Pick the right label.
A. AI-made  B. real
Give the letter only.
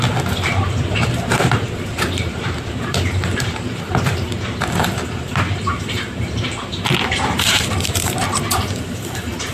A